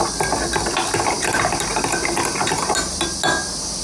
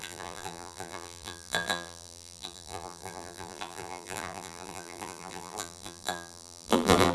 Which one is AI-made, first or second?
second